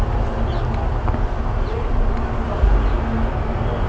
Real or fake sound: real